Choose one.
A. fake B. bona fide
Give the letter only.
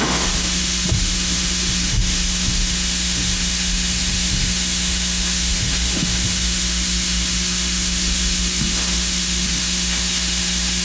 A